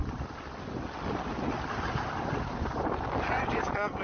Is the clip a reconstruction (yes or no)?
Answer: no